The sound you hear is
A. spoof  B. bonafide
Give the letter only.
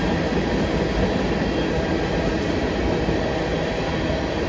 B